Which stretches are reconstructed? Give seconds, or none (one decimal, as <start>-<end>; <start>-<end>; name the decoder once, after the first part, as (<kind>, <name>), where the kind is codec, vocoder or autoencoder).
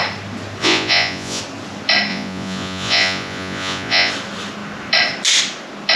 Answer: 0.6-1.4 (vocoder, Vocos); 2.1-4.1